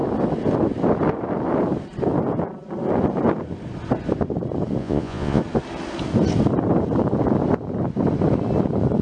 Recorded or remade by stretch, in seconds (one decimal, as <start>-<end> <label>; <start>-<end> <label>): 0.0-4.8 recorded; 4.8-5.4 remade; 5.4-9.0 recorded